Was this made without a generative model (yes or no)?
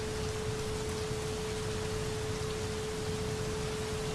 yes